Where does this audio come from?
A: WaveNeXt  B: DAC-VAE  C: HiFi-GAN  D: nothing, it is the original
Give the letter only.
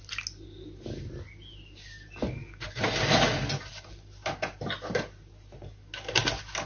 D